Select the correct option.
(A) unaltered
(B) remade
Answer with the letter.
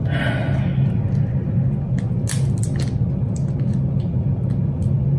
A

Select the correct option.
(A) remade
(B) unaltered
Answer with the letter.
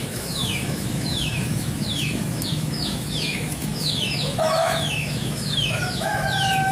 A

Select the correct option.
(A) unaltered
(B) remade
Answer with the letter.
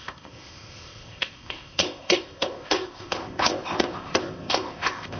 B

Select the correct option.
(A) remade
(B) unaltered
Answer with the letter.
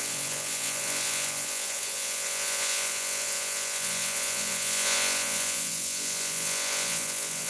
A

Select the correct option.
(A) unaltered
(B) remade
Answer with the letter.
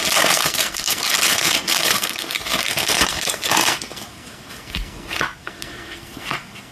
B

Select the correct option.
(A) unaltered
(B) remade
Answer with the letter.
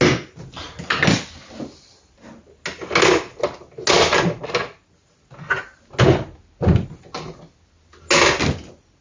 A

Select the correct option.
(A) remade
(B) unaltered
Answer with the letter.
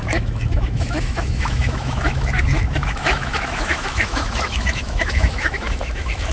A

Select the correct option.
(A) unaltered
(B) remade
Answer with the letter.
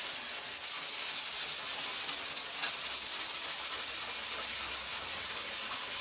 A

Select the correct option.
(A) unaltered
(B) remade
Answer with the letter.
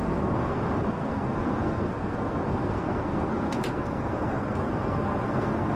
B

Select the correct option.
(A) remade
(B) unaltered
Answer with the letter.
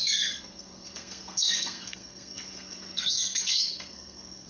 A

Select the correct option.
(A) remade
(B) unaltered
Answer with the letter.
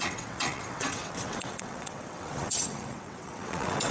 A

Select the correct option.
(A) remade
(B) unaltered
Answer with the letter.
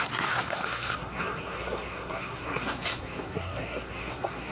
A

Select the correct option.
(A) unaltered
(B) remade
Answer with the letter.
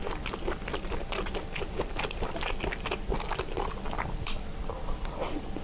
A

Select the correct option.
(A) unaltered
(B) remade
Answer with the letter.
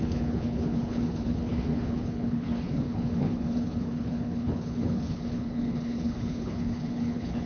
B